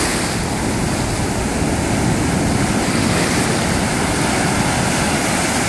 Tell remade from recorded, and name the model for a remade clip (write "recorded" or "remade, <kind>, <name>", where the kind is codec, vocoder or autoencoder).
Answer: recorded